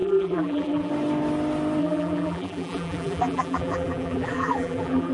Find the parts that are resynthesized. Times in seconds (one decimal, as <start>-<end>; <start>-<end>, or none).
0.0-0.9; 1.8-5.1